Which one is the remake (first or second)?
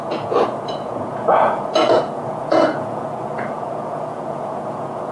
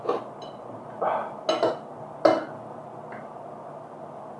first